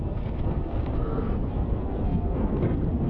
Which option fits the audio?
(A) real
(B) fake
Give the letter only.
B